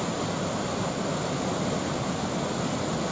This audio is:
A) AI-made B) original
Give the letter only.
B